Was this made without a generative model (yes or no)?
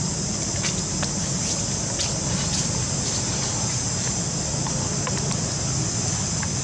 yes